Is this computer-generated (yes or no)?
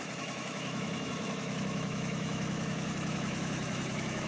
yes